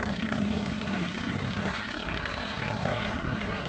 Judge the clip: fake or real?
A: fake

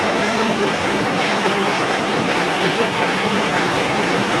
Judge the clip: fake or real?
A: fake